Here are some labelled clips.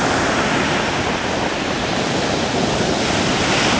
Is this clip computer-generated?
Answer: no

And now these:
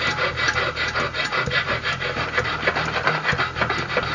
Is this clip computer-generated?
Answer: no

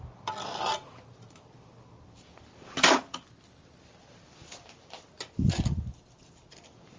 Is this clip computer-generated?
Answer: no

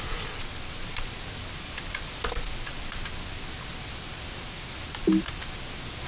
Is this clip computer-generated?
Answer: no